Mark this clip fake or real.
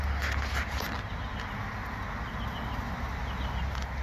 real